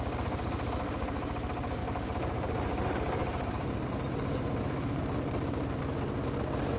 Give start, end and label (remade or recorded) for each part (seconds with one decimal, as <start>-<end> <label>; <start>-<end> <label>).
0.0-1.8 recorded; 1.8-5.8 remade; 5.8-6.8 recorded